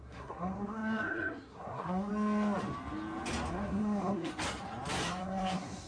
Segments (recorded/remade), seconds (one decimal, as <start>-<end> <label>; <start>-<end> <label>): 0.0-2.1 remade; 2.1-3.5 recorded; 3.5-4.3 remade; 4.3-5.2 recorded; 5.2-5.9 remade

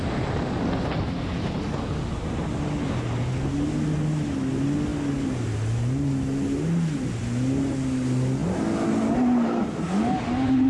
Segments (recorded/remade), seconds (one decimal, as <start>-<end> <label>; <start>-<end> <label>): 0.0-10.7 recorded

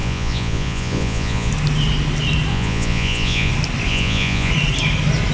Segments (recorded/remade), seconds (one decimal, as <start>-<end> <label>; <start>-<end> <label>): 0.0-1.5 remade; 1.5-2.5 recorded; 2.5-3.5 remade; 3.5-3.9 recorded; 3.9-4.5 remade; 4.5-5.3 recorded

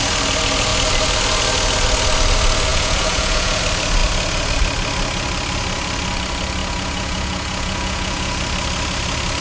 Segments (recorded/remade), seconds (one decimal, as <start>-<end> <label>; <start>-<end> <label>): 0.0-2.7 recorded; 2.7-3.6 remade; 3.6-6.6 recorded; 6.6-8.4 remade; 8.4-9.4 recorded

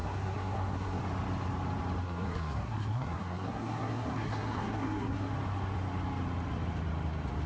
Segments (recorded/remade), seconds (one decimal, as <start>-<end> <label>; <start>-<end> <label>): 0.0-1.0 remade; 1.0-2.0 recorded; 2.0-5.3 remade; 5.3-7.5 recorded

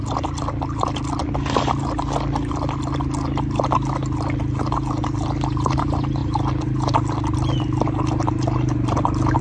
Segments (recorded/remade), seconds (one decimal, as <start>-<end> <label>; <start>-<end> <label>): 0.0-9.4 recorded

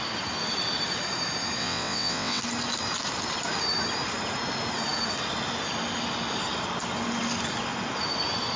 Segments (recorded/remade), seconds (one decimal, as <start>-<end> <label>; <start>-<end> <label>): 0.0-1.6 recorded; 1.6-2.4 remade; 2.4-8.6 recorded